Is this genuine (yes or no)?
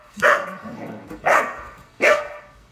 no